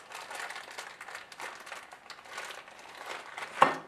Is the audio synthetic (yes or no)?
no